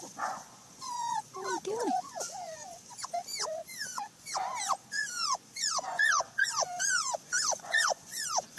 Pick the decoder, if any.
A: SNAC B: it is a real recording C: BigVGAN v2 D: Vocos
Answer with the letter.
D